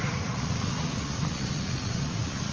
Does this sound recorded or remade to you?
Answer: remade